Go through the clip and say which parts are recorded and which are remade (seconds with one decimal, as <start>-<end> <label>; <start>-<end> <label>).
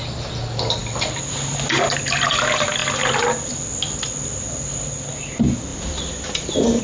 0.0-5.7 recorded; 5.7-6.8 remade